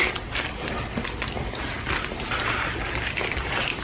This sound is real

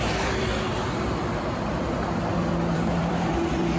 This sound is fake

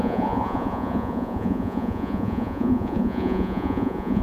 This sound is fake